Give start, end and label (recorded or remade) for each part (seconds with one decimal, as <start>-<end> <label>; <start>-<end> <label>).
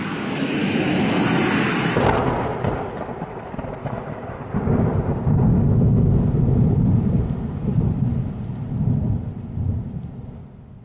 0.0-0.6 recorded; 0.6-1.2 remade; 1.2-3.8 recorded; 3.8-4.4 remade; 4.4-5.5 recorded; 5.5-6.1 remade; 6.1-10.8 recorded